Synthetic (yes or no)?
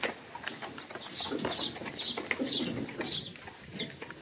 no